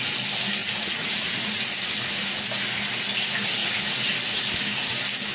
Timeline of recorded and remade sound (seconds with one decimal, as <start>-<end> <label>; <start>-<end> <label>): 0.0-0.6 recorded; 0.6-1.6 remade; 1.6-5.3 recorded